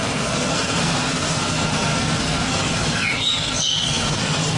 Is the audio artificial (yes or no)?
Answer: yes